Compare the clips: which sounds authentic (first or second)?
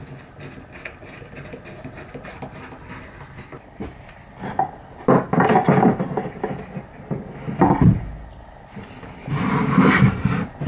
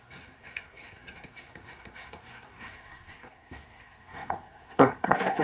first